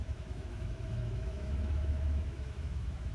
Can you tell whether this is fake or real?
fake